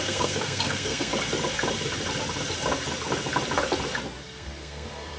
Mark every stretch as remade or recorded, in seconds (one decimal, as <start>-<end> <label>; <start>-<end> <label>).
0.0-1.1 remade; 1.1-4.2 recorded; 4.2-5.2 remade